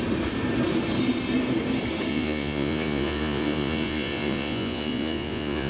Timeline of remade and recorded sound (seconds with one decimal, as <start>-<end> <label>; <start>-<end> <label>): 0.0-2.1 recorded; 2.1-5.7 remade